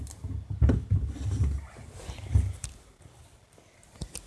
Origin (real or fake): real